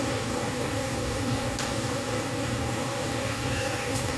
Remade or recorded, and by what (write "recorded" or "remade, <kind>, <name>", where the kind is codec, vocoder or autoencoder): remade, codec, DAC